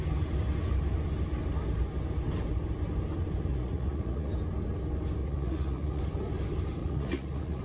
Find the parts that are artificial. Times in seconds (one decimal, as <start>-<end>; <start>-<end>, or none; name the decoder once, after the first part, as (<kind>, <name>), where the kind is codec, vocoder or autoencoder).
3.5-4.3 (vocoder, Vocos); 5.2-6.0; 6.8-7.6